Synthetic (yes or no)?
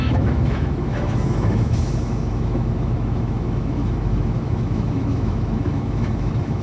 yes